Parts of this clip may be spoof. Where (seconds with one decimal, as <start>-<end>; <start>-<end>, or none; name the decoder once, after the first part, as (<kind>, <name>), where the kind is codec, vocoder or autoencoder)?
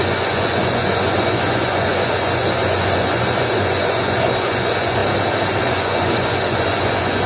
0.0-5.0 (vocoder, Vocos); 5.6-7.3